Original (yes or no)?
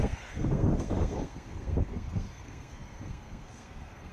no